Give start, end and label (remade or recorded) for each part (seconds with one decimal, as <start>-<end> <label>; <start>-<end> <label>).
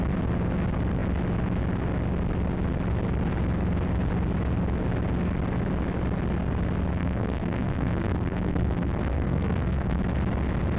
0.0-6.9 recorded; 6.9-10.0 remade; 10.0-10.8 recorded